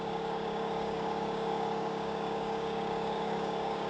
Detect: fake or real fake